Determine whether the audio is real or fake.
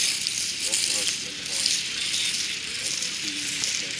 real